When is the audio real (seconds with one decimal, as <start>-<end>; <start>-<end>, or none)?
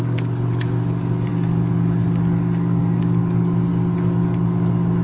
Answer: none